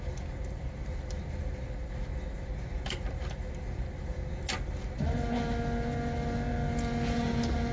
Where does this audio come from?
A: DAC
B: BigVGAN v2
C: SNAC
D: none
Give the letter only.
D